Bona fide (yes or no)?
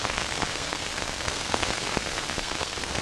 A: no